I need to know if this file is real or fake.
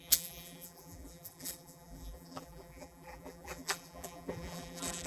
fake